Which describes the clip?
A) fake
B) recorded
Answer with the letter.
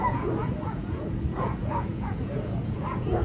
A